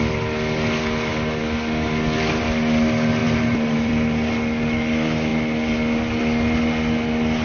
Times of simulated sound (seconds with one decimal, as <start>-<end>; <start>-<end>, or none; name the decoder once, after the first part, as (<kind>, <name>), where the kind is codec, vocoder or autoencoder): 3.2-3.9 (vocoder, BigVGAN v2)